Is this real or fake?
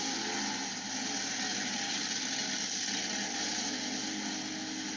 real